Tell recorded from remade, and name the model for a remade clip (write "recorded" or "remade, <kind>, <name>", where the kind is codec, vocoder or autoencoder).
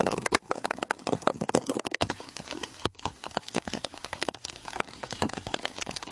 remade, codec, SNAC